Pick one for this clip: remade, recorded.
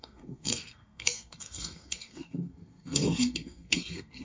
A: remade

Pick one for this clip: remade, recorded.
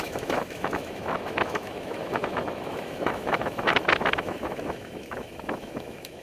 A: remade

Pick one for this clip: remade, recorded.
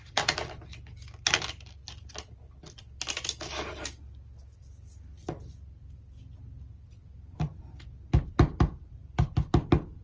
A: recorded